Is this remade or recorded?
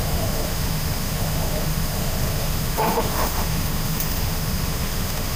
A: remade